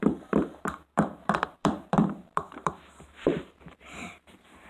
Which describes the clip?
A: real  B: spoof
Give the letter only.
B